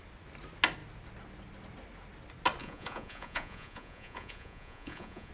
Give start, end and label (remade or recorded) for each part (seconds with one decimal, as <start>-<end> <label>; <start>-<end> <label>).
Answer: 0.0-2.6 recorded; 2.6-5.3 remade